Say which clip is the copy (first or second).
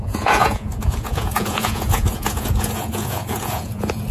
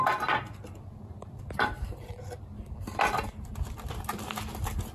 first